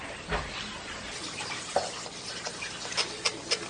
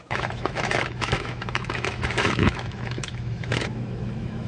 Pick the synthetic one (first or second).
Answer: second